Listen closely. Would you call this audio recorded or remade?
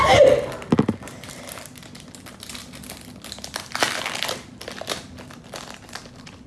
recorded